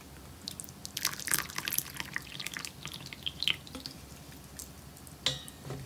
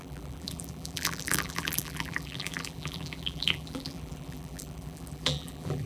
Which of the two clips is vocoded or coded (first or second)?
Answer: second